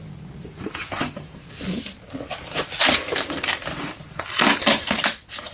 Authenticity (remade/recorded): recorded